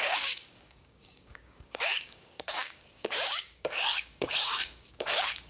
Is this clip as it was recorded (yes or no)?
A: no